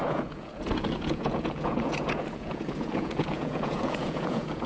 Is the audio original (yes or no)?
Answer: no